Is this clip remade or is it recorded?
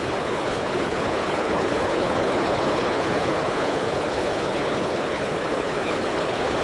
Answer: remade